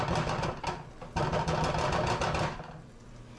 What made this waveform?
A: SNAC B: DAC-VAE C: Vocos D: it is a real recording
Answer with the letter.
D